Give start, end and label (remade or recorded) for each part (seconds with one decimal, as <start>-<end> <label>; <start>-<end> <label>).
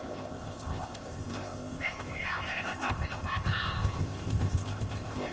0.0-5.3 remade